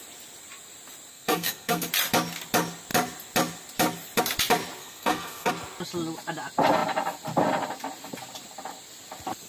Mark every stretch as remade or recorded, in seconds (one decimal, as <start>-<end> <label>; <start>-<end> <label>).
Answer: 0.0-1.1 recorded; 1.1-1.9 remade; 1.9-4.8 recorded; 4.8-5.5 remade; 5.5-9.5 recorded